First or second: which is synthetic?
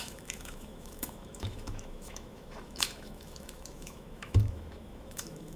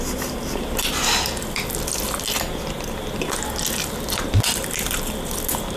first